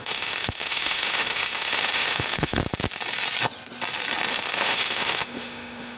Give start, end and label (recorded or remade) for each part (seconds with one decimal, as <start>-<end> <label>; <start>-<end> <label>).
0.0-2.6 remade; 2.6-4.3 recorded; 4.3-6.0 remade